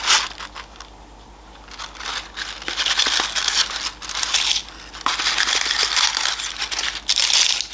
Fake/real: real